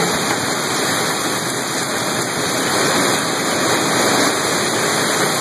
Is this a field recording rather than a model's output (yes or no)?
yes